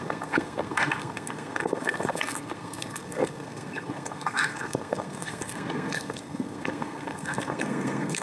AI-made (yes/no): yes